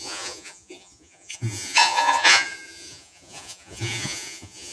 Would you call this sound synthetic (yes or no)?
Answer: yes